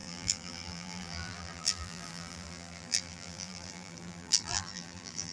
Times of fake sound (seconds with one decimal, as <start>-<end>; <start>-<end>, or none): 0.0-5.3